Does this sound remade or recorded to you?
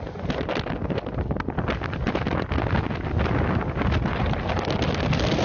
recorded